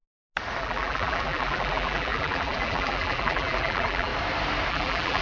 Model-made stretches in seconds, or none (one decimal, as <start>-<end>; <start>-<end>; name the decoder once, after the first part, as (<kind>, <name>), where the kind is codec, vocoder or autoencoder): 0.6-4.1 (vocoder, BigVGAN v2); 4.7-5.2